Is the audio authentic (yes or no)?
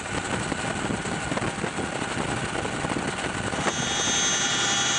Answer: yes